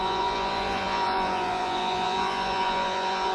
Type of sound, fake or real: fake